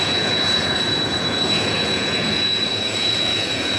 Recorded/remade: remade